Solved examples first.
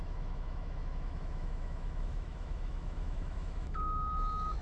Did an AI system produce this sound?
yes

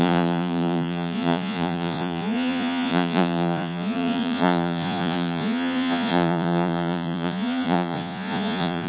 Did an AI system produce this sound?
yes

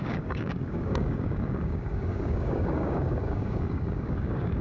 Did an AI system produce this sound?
yes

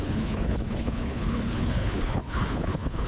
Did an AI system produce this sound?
yes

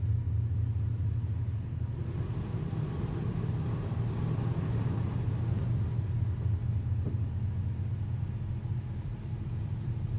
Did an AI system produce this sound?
no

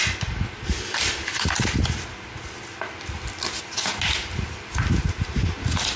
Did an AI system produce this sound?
no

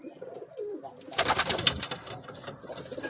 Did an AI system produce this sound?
no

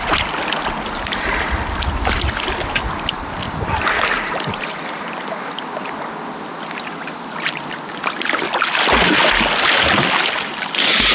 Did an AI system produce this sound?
no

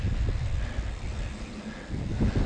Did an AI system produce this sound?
no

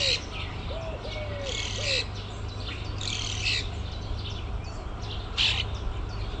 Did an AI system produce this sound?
no